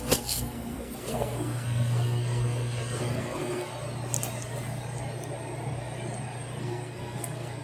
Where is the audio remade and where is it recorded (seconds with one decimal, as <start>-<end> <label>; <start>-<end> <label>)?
0.0-3.7 remade; 3.7-6.6 recorded; 6.6-7.6 remade